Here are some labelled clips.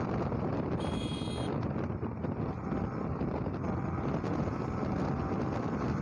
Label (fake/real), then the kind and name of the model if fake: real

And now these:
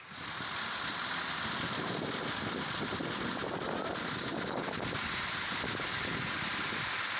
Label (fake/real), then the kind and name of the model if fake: real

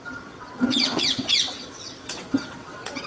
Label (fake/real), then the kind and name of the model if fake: fake, vocoder, WaveNeXt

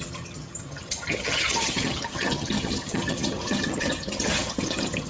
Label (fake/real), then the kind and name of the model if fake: fake, vocoder, HiFi-GAN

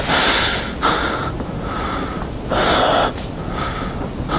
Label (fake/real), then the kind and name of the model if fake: real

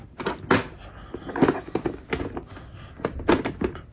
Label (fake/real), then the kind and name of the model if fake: real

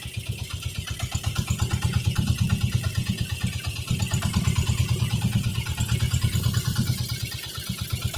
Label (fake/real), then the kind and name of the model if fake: real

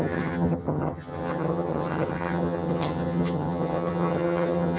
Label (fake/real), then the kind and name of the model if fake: fake, vocoder, HiFi-GAN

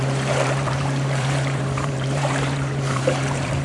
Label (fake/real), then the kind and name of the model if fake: fake, vocoder, BigVGAN v2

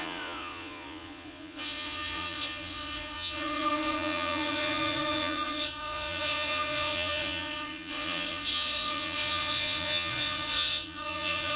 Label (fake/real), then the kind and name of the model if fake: fake, vocoder, Vocos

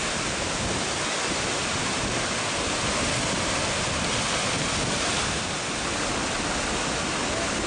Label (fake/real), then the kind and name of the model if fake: real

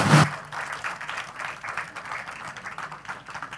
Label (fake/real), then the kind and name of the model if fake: real